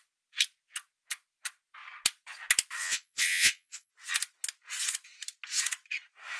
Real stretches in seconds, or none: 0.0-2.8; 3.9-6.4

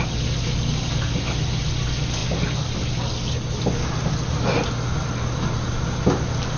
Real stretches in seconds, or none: 0.0-6.6

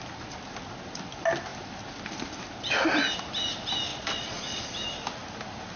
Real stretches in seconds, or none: 0.0-3.9; 4.6-5.8

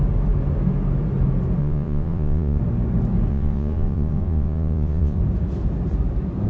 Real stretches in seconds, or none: 0.0-1.6; 2.6-3.3; 5.2-6.5

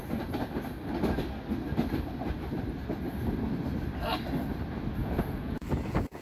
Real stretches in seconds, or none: 0.0-5.0

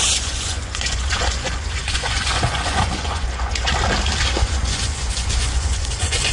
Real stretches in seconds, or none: 3.7-4.3

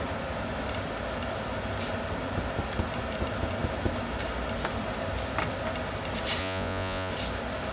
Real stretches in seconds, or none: 0.0-6.4; 7.1-7.7